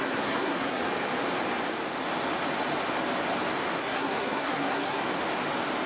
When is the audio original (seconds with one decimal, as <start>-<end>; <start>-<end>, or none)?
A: 0.8-3.8; 5.0-5.9